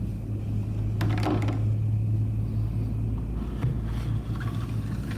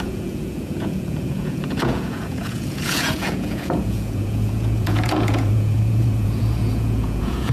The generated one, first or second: second